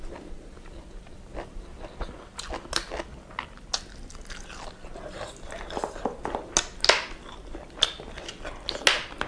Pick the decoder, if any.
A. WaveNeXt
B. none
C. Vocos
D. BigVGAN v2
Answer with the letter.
B